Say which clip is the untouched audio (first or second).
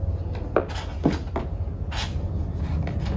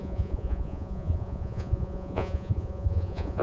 first